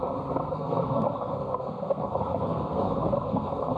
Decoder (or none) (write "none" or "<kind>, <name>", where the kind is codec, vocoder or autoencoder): codec, SNAC